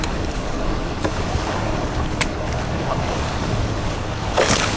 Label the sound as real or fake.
fake